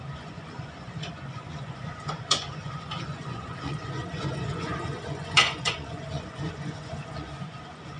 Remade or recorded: remade